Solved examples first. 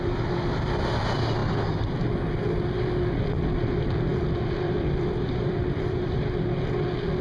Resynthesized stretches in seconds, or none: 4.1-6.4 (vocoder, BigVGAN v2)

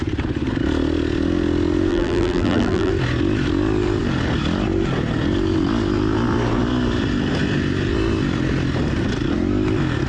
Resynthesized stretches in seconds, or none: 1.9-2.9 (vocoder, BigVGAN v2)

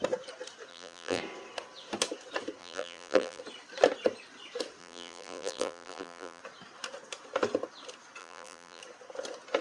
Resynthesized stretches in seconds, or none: 0.7-1.2 (vocoder, BigVGAN v2); 2.6-3.4; 4.8-6.4; 8.2-8.8

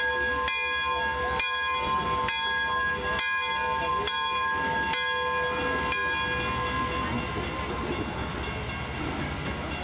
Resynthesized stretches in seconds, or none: none

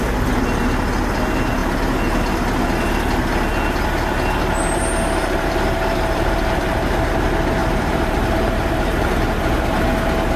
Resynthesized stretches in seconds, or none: 5.2-7.1 (vocoder, BigVGAN v2); 7.6-9.1